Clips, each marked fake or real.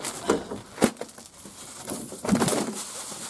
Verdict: real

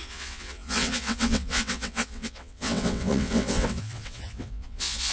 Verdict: fake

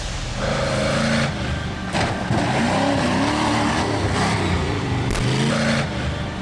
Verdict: real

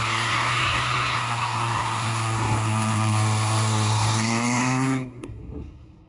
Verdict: fake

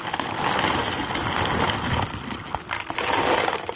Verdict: real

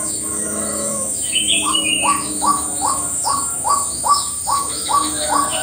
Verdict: fake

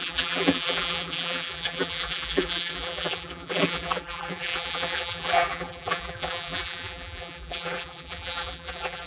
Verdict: fake